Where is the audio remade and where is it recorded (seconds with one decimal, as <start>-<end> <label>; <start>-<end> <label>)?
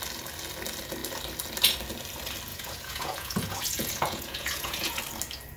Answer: 0.0-2.5 recorded; 2.5-5.0 remade; 5.0-5.6 recorded